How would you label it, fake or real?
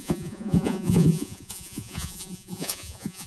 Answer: fake